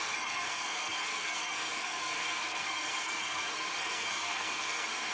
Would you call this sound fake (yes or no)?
yes